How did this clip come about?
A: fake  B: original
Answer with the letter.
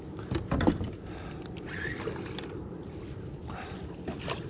B